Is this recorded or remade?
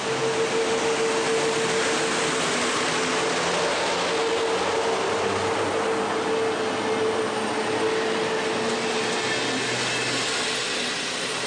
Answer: recorded